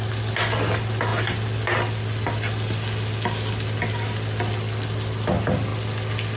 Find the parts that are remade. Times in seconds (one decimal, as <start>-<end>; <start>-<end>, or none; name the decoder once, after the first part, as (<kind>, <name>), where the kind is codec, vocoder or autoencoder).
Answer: none